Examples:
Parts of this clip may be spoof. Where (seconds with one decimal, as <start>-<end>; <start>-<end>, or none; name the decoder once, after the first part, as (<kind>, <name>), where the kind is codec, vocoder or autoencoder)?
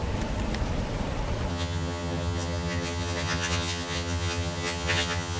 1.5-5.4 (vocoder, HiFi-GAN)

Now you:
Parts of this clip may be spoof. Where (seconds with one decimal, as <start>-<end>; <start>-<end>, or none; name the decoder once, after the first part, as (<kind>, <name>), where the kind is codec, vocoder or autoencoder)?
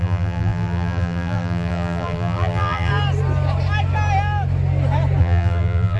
0.0-2.9 (vocoder, BigVGAN v2); 5.2-6.0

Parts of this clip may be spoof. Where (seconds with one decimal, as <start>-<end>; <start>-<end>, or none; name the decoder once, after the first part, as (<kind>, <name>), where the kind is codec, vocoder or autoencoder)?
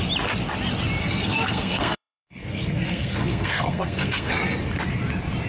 1.0-4.3 (codec, SNAC)